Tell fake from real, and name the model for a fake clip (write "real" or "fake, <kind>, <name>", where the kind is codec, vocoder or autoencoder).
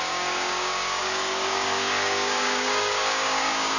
fake, codec, DAC